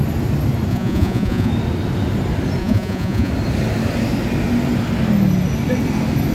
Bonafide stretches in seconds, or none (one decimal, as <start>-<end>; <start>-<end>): 0.0-0.7; 1.5-2.6; 3.3-6.3